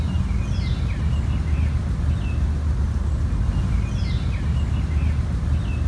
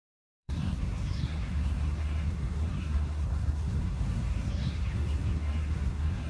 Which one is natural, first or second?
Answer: first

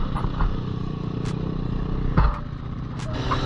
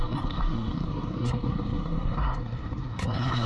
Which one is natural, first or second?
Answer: first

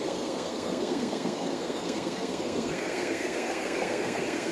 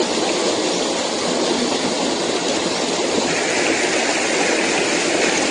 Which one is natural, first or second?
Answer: second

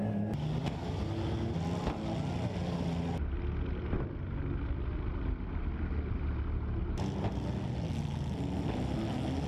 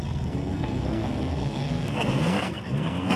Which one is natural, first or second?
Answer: first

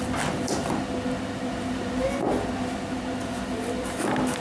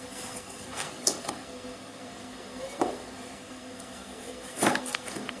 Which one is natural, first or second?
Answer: first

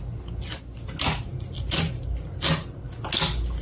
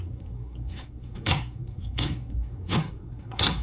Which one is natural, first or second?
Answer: first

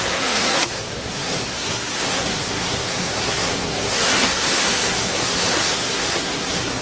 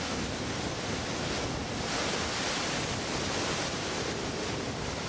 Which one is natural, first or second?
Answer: second